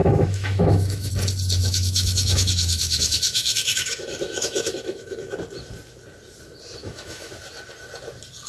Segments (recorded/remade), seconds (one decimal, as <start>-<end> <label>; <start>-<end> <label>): 0.0-1.1 remade; 1.1-1.6 recorded; 1.6-5.3 remade; 5.3-6.8 recorded; 6.8-7.3 remade; 7.3-8.5 recorded